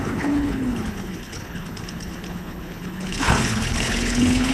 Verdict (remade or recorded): remade